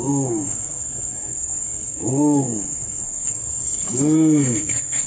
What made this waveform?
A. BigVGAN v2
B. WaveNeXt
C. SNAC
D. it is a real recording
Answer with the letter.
C